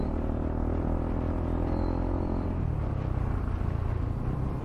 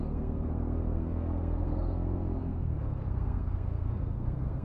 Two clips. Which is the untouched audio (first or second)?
first